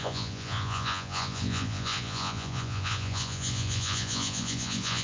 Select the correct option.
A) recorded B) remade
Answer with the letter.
B